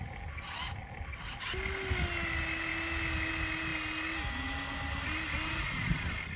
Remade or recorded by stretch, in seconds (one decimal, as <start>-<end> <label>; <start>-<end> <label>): 0.0-6.4 recorded